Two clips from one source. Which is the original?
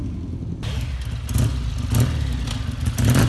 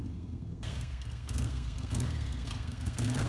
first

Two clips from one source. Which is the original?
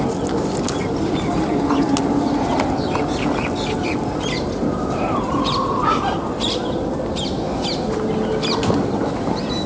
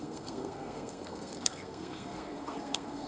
first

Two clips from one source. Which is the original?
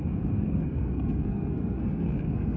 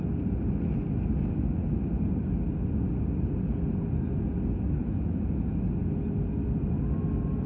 second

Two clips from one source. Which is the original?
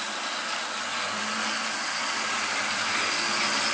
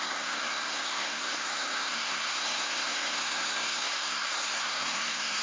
first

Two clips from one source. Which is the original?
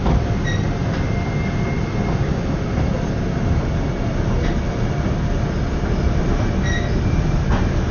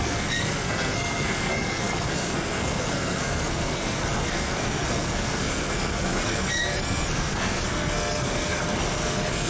first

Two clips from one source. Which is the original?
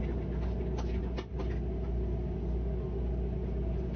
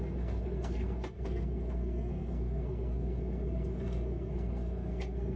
first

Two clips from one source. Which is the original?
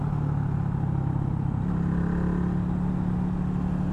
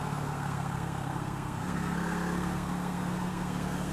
first